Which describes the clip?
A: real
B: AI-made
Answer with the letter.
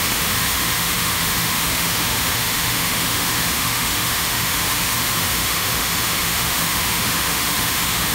B